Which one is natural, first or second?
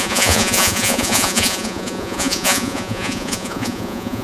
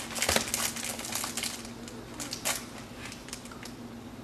second